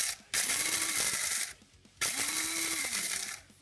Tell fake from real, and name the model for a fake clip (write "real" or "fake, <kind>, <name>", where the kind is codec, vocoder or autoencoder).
real